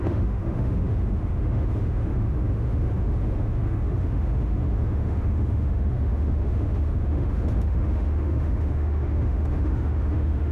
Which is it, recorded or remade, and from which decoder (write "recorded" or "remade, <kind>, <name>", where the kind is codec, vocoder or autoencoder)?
remade, autoencoder, DAC-VAE